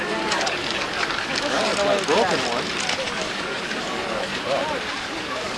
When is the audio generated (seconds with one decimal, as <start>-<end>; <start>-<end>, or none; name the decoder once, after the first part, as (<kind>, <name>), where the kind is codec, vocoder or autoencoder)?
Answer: 0.0-1.7 (codec, DAC); 3.0-4.3; 4.9-5.6